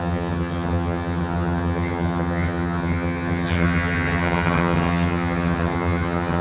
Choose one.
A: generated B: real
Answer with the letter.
A